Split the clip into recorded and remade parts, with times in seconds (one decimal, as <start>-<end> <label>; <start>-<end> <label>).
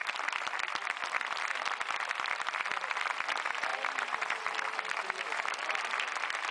0.0-6.5 recorded